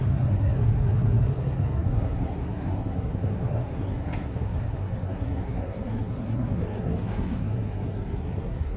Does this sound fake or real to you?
fake